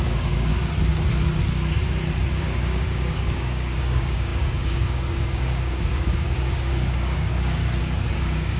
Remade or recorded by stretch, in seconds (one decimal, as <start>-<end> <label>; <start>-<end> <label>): 0.0-0.5 remade; 0.5-2.3 recorded; 2.3-7.6 remade; 7.6-8.2 recorded; 8.2-8.6 remade